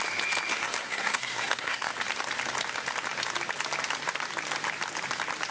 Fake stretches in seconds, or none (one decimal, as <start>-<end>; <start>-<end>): 0.5-1.9